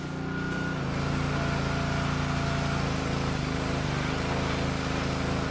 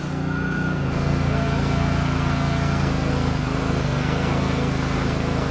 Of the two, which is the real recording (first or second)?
first